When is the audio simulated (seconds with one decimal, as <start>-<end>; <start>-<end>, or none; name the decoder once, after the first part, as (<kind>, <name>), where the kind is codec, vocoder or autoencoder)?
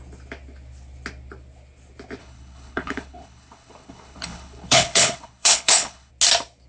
2.2-6.1 (codec, HILCodec)